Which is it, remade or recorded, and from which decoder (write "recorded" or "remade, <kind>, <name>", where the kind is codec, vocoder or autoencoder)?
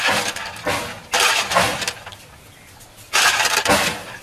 recorded